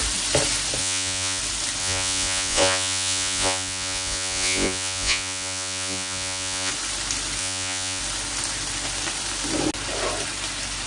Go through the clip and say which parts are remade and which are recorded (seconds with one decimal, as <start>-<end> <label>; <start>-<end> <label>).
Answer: 0.0-0.8 recorded; 0.8-1.4 remade; 1.4-1.8 recorded; 1.8-6.7 remade; 6.7-7.4 recorded; 7.4-8.0 remade; 8.0-10.9 recorded